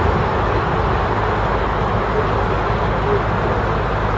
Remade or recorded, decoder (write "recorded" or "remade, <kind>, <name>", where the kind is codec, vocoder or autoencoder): recorded